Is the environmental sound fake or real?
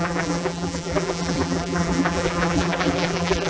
fake